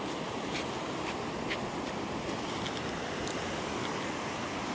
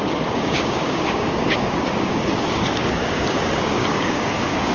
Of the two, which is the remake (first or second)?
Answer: second